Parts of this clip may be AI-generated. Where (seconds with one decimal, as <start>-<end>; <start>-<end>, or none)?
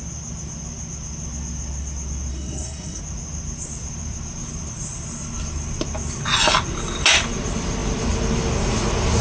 2.3-3.0